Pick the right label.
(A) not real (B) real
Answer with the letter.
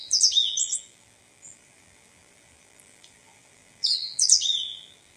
A